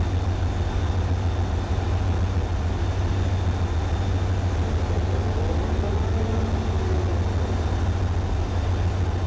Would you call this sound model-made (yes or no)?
no